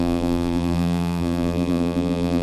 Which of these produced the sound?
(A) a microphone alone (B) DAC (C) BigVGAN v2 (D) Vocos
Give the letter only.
C